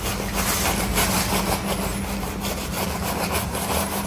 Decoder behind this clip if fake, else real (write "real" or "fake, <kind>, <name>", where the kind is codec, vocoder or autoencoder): real